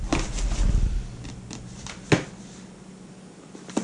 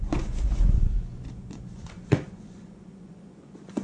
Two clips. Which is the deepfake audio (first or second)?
second